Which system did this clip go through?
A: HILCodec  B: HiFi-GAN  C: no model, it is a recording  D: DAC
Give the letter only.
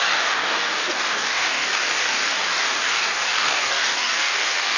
D